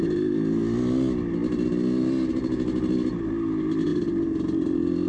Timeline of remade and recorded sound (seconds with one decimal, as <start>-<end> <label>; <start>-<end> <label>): 0.0-5.1 recorded